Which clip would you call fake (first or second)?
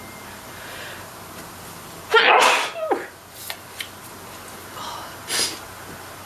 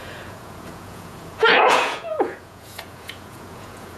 second